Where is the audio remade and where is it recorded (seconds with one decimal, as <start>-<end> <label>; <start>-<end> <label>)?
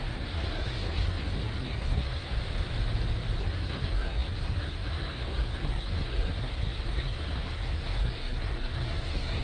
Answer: 0.0-2.3 remade; 2.3-3.4 recorded; 3.4-9.4 remade